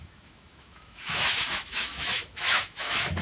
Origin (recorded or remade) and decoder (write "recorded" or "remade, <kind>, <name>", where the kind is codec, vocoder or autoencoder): remade, autoencoder, DAC-VAE